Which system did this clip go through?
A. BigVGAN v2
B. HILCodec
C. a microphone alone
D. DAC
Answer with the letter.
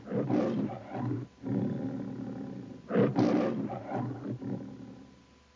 C